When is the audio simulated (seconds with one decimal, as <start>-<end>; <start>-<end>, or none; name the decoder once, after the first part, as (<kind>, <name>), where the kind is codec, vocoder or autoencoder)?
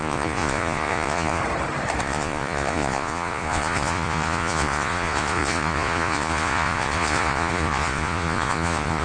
0.0-1.4 (vocoder, Vocos); 2.0-9.0